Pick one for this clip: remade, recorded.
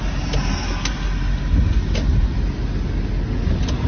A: recorded